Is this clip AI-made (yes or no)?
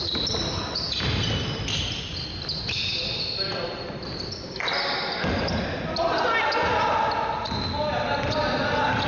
no